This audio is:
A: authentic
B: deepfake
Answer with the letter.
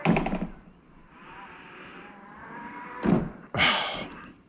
A